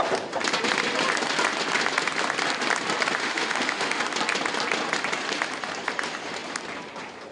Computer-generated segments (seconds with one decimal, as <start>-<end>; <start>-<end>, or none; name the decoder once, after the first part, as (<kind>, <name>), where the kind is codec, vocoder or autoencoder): 3.2-4.0 (autoencoder, DAC-VAE)